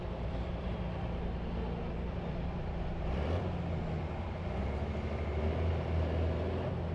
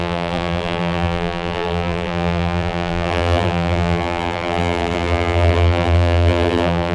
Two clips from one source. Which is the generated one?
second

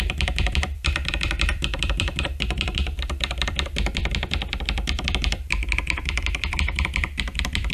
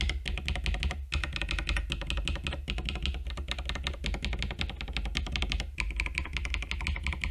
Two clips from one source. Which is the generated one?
first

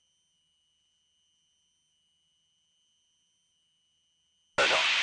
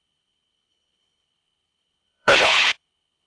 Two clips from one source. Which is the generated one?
second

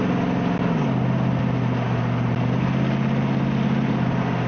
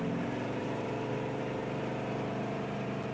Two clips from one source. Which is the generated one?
second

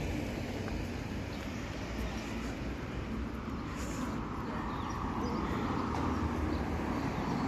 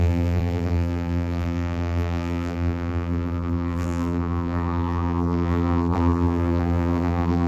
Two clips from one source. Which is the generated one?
second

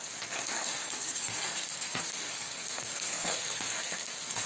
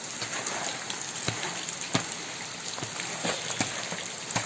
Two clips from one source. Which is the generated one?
first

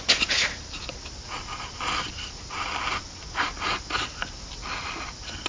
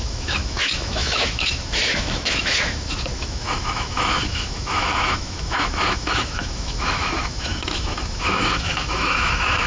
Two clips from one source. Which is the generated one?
second